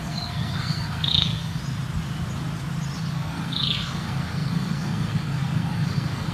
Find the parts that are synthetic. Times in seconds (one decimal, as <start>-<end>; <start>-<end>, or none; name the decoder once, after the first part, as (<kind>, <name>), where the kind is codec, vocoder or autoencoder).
0.0-1.6 (codec, SNAC); 3.1-6.3